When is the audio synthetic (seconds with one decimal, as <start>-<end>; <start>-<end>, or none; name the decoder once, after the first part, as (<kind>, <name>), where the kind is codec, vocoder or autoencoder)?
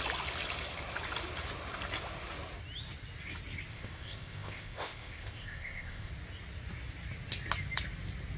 3.7-6.1 (codec, ZipCodec)